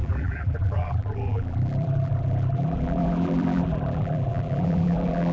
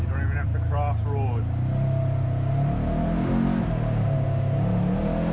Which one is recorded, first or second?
second